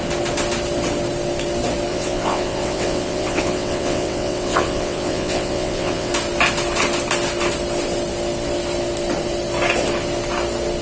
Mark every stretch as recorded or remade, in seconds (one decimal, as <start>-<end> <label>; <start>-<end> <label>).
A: 0.0-1.9 recorded; 1.9-6.1 remade; 6.1-10.8 recorded